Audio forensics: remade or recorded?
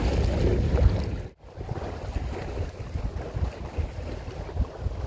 recorded